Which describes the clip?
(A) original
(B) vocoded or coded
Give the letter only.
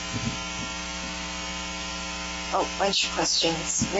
B